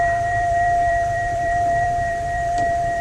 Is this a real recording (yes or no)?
no